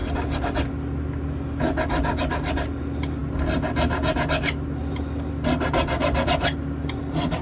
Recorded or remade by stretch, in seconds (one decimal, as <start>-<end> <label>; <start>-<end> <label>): 0.0-7.4 recorded

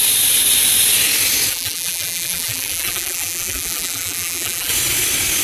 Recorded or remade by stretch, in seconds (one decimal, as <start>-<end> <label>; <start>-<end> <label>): 0.0-1.5 recorded; 1.5-4.7 remade; 4.7-5.4 recorded

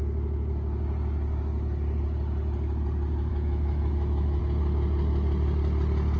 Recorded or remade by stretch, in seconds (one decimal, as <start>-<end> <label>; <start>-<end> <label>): 0.0-3.3 recorded; 3.3-4.4 remade; 4.4-6.2 recorded

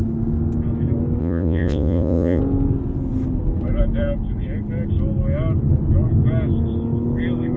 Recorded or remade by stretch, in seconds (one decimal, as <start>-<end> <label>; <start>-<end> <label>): 0.0-1.2 recorded; 1.2-2.4 remade; 2.4-7.6 recorded

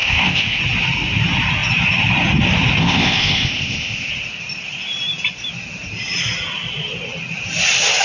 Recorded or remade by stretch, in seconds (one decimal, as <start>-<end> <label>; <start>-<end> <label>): 0.0-0.6 remade; 0.6-2.8 recorded; 2.8-4.1 remade; 4.1-8.0 recorded

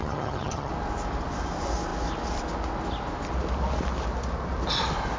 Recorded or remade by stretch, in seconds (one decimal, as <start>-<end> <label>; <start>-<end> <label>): 0.0-0.7 remade; 0.7-5.2 recorded

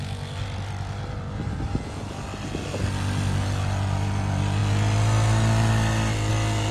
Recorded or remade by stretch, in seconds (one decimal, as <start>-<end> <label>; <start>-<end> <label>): 0.0-6.7 recorded

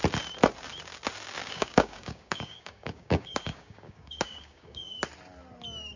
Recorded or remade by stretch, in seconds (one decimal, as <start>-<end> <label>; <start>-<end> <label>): 0.0-1.4 recorded; 1.4-5.0 remade; 5.0-6.0 recorded